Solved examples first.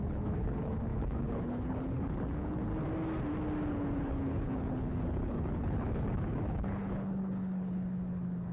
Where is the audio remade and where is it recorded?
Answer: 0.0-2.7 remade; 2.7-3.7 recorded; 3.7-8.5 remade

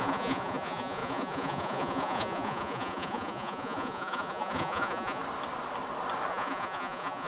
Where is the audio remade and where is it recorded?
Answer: 0.0-5.2 remade; 5.2-6.3 recorded; 6.3-7.3 remade

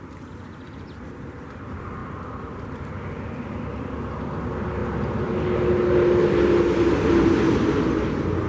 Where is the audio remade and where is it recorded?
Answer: 0.0-8.5 recorded

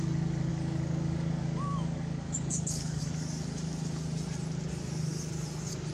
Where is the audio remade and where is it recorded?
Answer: 0.0-0.5 recorded; 0.5-3.0 remade; 3.0-5.9 recorded

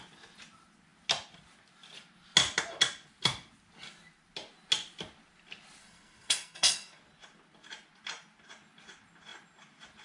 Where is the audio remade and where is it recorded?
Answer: 0.0-5.8 recorded; 5.8-7.0 remade; 7.0-10.0 recorded